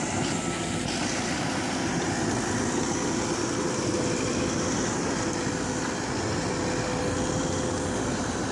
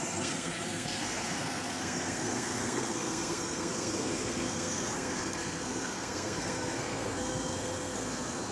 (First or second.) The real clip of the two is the first